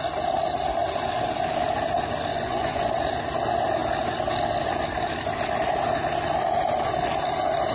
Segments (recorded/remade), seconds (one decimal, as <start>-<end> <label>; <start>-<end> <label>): 0.0-2.3 recorded; 2.3-2.9 remade; 2.9-7.7 recorded

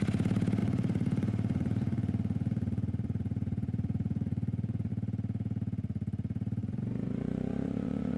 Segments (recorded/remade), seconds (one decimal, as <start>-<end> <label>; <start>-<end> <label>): 0.0-0.6 recorded; 0.6-4.9 remade; 4.9-6.6 recorded; 6.6-8.2 remade

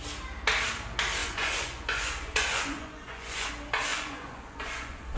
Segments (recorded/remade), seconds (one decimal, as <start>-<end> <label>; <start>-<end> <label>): 0.0-1.2 recorded; 1.2-3.5 remade; 3.5-3.9 recorded; 3.9-5.2 remade

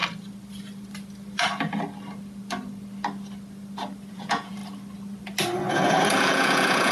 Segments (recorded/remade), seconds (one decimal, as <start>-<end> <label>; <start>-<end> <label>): 0.0-4.1 recorded; 4.1-4.6 remade; 4.6-5.7 recorded; 5.7-6.9 remade